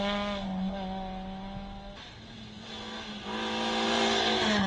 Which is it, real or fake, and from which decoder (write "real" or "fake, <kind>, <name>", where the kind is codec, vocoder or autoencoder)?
real